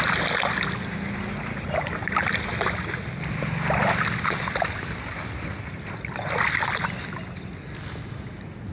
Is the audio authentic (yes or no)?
yes